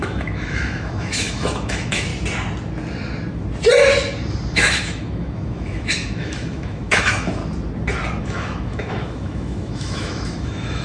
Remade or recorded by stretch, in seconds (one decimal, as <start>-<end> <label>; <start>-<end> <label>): 0.0-2.1 remade; 2.1-4.5 recorded; 4.5-7.4 remade; 7.4-8.2 recorded; 8.2-10.8 remade